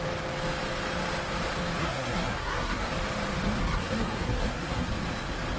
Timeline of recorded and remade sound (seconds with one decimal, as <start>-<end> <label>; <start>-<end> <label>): 0.0-1.8 recorded; 1.8-2.9 remade; 2.9-3.6 recorded; 3.6-4.9 remade; 4.9-5.6 recorded